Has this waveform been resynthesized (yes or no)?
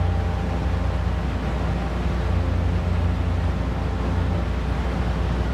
no